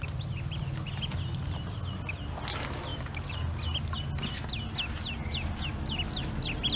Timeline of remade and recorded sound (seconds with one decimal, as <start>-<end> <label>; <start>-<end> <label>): 0.0-6.8 recorded